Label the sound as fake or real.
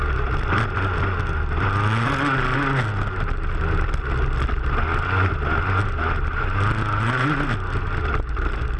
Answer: real